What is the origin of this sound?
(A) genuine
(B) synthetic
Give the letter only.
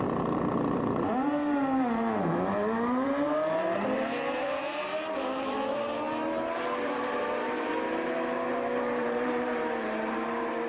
B